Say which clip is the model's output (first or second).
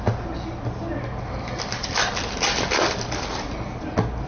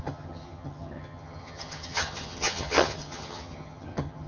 second